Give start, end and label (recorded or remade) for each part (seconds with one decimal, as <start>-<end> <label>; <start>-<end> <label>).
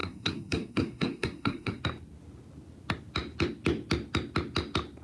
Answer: 0.0-1.8 remade; 1.8-5.0 recorded